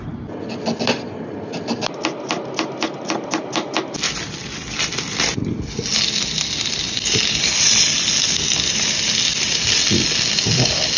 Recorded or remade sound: recorded